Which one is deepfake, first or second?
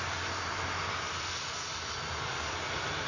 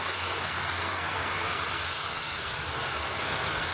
second